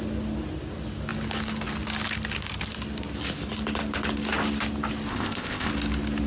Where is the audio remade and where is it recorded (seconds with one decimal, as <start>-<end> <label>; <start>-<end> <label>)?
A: 0.0-5.1 recorded; 5.1-5.7 remade; 5.7-6.3 recorded